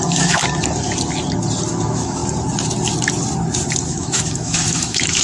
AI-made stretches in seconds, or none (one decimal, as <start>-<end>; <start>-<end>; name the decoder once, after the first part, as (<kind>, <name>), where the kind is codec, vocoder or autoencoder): 0.0-0.4 (autoencoder, DAC-VAE); 1.8-2.2; 3.9-5.2